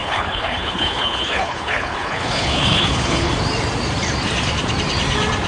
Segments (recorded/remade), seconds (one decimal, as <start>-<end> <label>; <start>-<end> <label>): 0.0-3.3 remade; 3.3-5.5 recorded

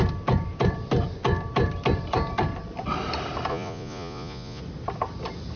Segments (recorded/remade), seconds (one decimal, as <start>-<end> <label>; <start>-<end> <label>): 0.0-3.5 recorded; 3.5-4.6 remade; 4.6-5.6 recorded

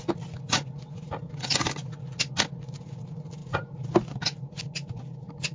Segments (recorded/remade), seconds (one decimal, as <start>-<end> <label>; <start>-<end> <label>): 0.0-3.4 recorded; 3.4-4.6 remade; 4.6-5.5 recorded

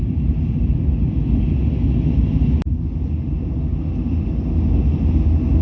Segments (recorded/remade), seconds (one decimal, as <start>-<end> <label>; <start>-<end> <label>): 0.0-5.6 recorded

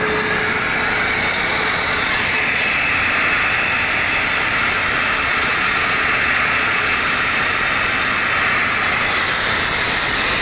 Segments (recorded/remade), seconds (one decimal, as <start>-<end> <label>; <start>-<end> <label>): 0.0-1.5 recorded; 1.5-2.9 remade; 2.9-5.2 recorded; 5.2-7.0 remade; 7.0-10.4 recorded

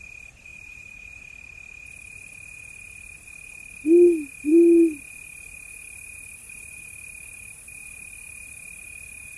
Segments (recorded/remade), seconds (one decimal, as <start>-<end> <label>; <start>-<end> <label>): 0.0-0.5 recorded; 0.5-1.2 remade; 1.2-9.4 recorded